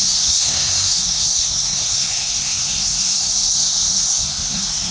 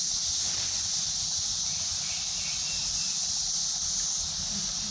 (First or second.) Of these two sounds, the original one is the second